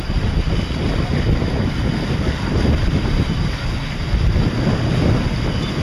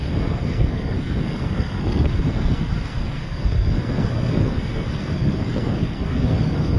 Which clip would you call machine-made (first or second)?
second